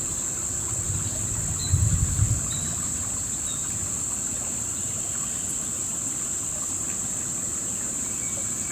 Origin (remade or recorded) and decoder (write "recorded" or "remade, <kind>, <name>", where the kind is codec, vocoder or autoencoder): recorded